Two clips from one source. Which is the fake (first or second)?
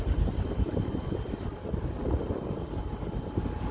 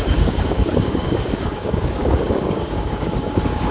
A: second